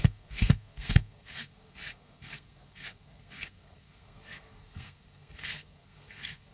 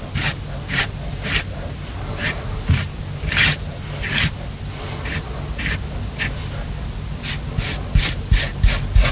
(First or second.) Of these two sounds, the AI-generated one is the first